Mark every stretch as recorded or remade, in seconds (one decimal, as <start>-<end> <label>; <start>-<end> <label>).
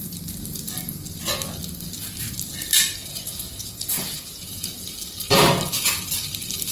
0.0-3.0 recorded; 3.0-4.7 remade; 4.7-6.7 recorded